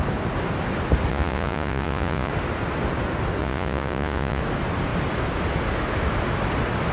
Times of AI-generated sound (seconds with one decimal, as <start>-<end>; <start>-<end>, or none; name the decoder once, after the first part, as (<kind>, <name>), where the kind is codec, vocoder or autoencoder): 1.1-2.3 (vocoder, Vocos); 3.4-4.4